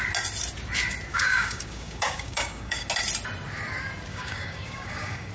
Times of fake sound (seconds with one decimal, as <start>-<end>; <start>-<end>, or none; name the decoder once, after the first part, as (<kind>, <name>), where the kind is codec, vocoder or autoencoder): 1.1-2.9 (codec, DAC); 4.1-5.3